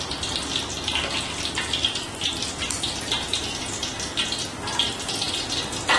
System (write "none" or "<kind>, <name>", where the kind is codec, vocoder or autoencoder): none